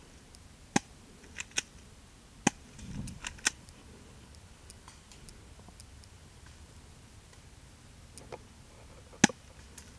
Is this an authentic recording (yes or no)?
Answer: yes